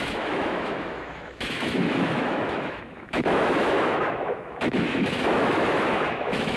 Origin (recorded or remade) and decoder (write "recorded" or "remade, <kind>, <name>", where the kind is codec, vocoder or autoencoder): remade, autoencoder, DAC-VAE